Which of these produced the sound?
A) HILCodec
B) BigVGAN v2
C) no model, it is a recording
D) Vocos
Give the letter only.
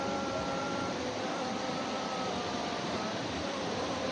B